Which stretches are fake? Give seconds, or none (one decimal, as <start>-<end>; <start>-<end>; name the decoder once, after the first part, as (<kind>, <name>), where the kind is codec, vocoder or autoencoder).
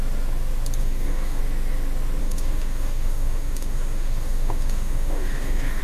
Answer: 0.8-1.4 (codec, DAC); 2.2-5.8